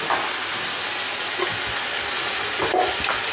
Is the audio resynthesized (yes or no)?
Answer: no